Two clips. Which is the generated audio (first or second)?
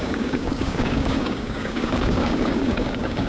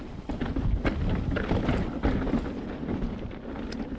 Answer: first